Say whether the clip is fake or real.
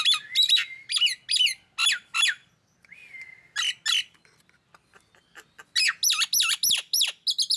real